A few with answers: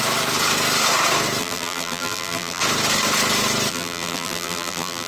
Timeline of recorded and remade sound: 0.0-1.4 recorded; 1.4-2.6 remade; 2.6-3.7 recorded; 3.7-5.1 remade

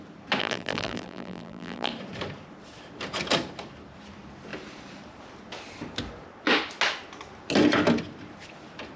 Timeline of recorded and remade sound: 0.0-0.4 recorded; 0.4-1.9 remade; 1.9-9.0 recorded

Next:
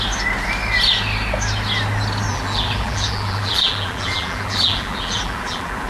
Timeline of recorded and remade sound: 0.0-2.3 recorded; 2.3-5.9 remade

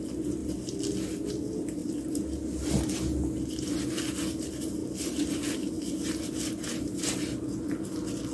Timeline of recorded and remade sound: 0.0-0.4 recorded; 0.4-1.3 remade; 1.3-8.3 recorded

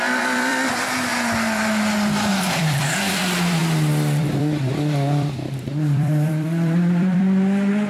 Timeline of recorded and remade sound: 0.0-1.1 remade; 1.1-2.3 recorded; 2.3-7.9 remade

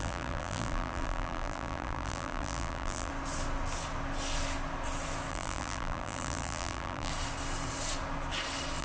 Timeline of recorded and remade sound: 0.0-3.1 remade; 3.1-5.3 recorded; 5.3-7.1 remade; 7.1-8.8 recorded